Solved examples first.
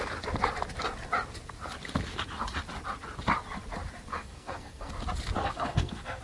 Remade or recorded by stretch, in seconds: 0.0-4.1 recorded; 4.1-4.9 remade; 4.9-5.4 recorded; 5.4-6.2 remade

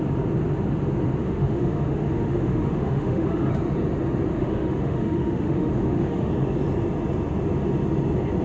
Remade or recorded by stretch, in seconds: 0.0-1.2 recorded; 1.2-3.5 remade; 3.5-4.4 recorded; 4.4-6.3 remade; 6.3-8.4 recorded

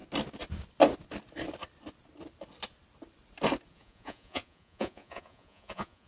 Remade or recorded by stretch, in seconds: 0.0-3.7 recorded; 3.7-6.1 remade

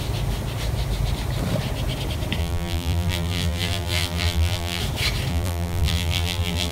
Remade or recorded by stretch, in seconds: 0.0-2.4 recorded; 2.4-4.8 remade; 4.8-5.3 recorded; 5.3-6.7 remade

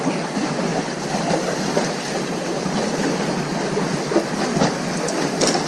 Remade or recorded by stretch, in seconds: 0.0-5.7 recorded